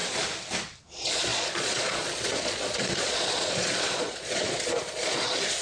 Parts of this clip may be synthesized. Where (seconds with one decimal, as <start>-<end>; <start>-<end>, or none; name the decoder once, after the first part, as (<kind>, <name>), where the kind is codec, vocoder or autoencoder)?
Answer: 0.8-5.6 (vocoder, Vocos)